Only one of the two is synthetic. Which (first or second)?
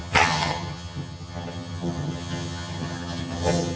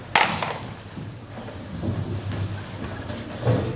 first